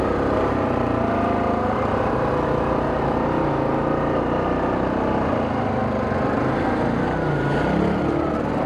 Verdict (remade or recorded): recorded